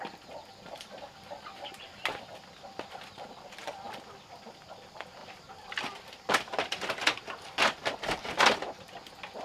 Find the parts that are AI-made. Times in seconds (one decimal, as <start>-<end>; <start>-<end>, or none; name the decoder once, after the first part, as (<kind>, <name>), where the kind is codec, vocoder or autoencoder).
5.2-7.0 (vocoder, BigVGAN v2)